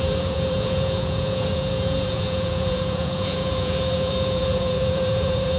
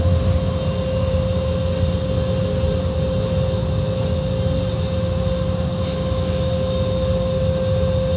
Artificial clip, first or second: first